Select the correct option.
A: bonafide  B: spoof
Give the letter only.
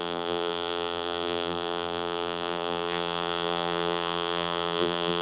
B